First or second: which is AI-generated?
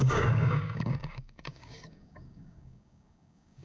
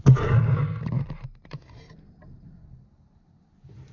first